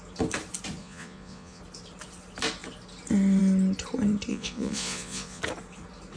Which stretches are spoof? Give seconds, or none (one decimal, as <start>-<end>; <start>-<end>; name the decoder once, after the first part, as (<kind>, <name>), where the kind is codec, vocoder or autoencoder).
0.8-1.6 (vocoder, Vocos); 4.3-5.4

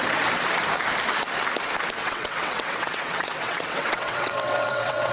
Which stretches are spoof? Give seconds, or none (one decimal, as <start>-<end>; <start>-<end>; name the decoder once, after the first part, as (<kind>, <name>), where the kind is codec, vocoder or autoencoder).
2.0-5.1 (vocoder, WaveNeXt)

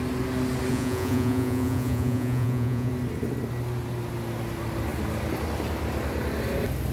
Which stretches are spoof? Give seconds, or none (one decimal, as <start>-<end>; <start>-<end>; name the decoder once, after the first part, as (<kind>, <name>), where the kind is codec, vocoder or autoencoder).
0.7-2.9 (vocoder, Vocos)